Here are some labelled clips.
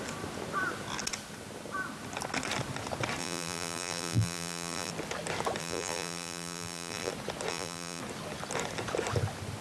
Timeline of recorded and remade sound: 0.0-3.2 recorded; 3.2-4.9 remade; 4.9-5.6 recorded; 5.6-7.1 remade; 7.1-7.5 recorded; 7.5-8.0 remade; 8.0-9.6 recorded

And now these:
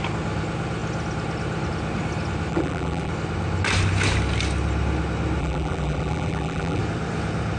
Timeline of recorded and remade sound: 0.0-2.5 recorded; 2.5-3.1 remade; 3.1-5.4 recorded; 5.4-6.8 remade; 6.8-7.6 recorded

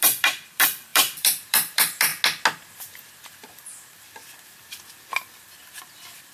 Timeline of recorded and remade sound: 0.0-2.1 remade; 2.1-3.1 recorded; 3.1-6.3 remade

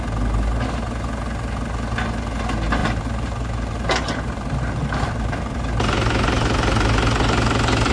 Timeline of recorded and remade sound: 0.0-2.8 recorded; 2.8-5.6 remade; 5.6-7.9 recorded

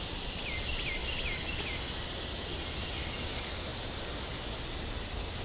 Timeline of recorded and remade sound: 0.0-5.4 recorded

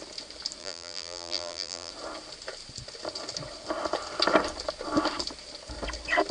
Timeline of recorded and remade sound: 0.0-0.6 recorded; 0.6-1.9 remade; 1.9-6.3 recorded